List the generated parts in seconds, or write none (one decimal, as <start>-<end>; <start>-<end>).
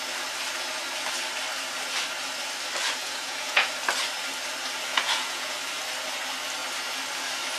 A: 3.0-3.7; 4.9-5.6